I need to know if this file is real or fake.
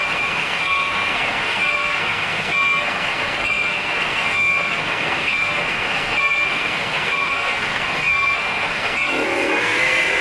fake